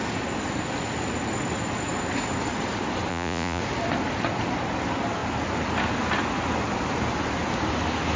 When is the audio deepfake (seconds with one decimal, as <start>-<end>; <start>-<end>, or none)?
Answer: 3.1-3.6